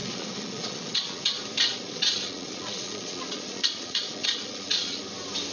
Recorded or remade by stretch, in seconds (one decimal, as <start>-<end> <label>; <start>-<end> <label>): 0.0-1.2 remade; 1.2-1.7 recorded; 1.7-5.0 remade; 5.0-5.5 recorded